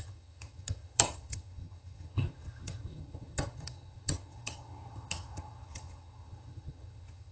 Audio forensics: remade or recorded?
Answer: remade